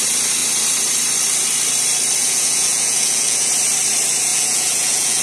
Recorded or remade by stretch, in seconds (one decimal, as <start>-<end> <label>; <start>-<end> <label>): 0.0-2.2 recorded; 2.2-3.5 remade; 3.5-4.3 recorded; 4.3-5.2 remade